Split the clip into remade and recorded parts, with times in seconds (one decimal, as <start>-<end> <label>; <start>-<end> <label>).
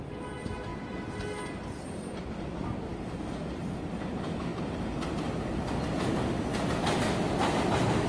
0.0-8.1 recorded